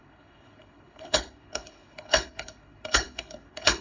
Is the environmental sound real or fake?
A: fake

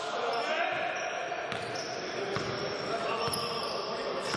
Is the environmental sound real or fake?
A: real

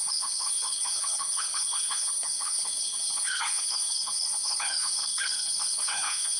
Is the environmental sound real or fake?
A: fake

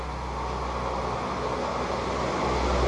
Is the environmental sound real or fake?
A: real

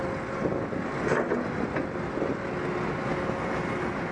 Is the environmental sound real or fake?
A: real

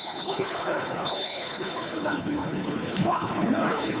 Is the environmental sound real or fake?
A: fake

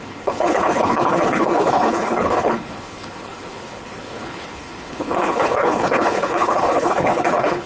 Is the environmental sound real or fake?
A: fake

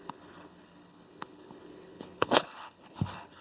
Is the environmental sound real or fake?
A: fake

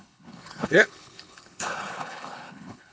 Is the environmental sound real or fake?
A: fake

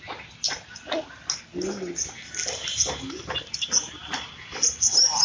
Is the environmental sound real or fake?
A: real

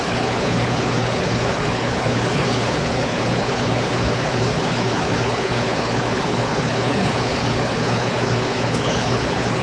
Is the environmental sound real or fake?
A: fake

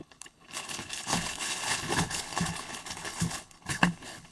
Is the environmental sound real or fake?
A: fake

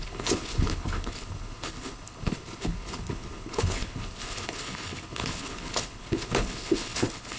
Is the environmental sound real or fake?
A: fake